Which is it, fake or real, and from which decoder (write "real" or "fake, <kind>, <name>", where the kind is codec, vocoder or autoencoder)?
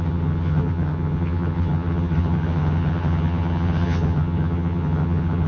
fake, vocoder, HiFi-GAN